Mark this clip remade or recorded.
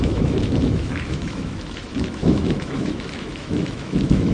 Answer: remade